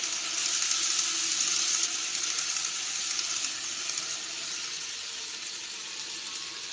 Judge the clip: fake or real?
real